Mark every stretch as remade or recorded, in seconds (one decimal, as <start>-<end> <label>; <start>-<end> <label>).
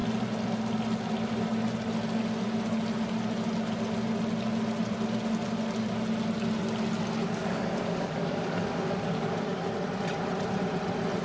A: 0.0-7.2 recorded; 7.2-9.7 remade; 9.7-11.2 recorded